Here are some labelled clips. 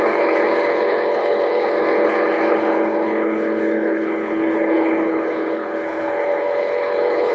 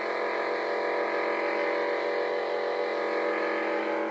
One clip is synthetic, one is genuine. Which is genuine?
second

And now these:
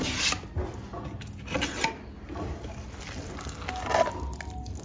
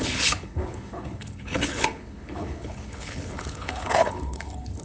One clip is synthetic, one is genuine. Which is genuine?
first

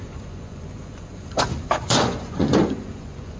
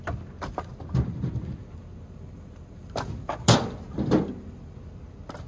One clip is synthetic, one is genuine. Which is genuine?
second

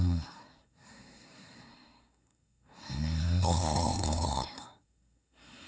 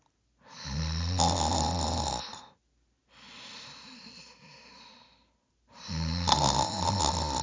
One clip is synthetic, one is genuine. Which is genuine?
second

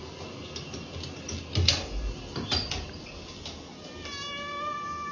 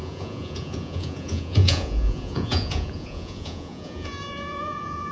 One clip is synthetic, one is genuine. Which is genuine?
first